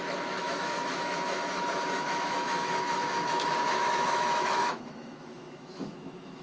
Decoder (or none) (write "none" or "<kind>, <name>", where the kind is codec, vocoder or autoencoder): autoencoder, DAC-VAE